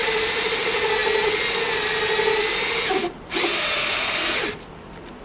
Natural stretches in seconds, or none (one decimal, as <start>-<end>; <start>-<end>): 0.0-5.2